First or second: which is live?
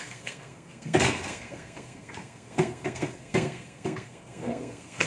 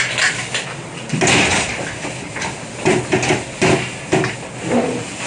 second